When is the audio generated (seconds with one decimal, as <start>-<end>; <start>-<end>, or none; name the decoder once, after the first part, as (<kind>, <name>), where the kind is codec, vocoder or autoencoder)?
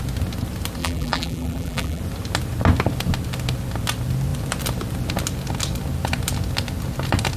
0.8-2.0 (vocoder, BigVGAN v2)